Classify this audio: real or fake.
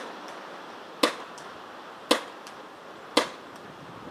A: real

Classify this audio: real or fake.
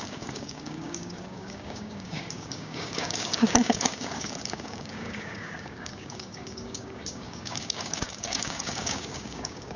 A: fake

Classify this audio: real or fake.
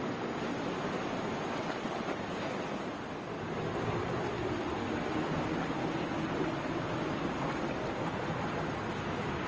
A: real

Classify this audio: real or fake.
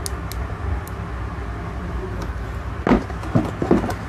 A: real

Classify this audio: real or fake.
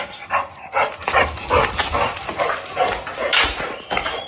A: real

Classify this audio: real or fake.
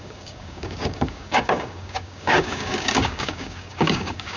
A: fake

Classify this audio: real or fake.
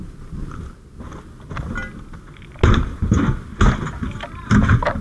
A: real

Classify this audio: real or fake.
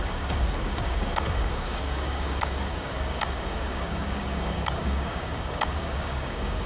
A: fake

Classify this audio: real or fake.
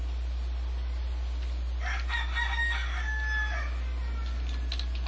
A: real